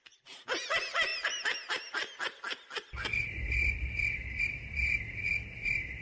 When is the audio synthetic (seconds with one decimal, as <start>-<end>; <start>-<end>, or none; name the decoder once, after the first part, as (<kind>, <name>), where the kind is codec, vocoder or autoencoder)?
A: none